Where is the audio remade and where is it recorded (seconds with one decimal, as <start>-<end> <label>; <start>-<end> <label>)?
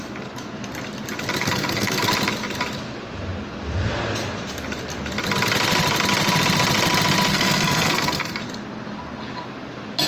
0.0-1.4 recorded; 1.4-2.1 remade; 2.1-7.3 recorded; 7.3-8.4 remade; 8.4-10.1 recorded